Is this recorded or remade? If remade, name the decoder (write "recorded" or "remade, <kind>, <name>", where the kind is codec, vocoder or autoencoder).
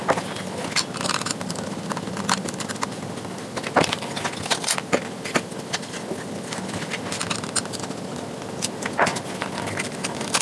recorded